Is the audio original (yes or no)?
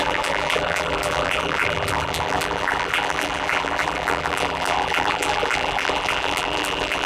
no